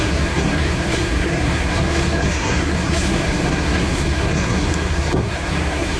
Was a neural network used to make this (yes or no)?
yes